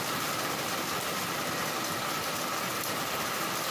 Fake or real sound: fake